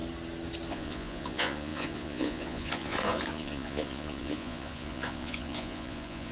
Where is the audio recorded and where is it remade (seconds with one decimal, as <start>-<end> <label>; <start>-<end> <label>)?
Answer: 0.0-0.7 recorded; 0.7-6.3 remade